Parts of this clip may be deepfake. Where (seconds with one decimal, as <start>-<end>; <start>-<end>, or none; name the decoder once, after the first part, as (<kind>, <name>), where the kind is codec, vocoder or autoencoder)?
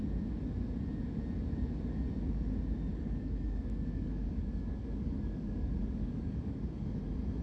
2.9-7.0 (codec, DAC)